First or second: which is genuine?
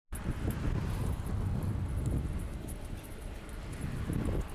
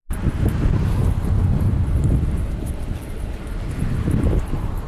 first